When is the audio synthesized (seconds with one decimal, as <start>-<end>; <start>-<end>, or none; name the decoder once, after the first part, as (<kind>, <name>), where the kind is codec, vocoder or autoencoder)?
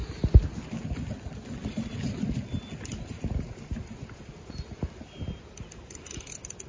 none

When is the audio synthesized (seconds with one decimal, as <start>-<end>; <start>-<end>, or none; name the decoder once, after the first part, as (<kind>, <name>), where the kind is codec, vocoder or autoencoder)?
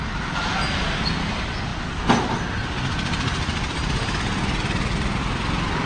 none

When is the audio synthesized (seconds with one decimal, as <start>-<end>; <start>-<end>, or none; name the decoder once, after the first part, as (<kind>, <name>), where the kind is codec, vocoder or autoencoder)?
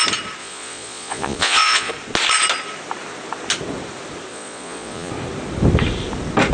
0.4-1.9 (vocoder, Vocos); 4.3-5.1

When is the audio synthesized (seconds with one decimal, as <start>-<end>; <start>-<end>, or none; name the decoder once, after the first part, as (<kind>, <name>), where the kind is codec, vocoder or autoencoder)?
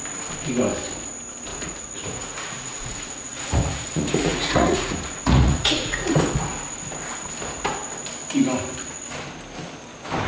1.5-6.2 (vocoder, Vocos)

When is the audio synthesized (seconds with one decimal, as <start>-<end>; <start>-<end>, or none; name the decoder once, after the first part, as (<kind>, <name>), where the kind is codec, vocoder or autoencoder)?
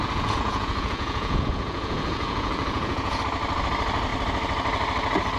0.0-3.2 (vocoder, Vocos)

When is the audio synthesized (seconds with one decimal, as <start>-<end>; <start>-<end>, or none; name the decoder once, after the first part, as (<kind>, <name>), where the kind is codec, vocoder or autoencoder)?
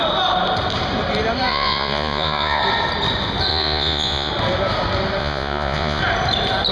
1.5-2.6 (vocoder, Vocos); 3.5-4.3; 5.2-6.0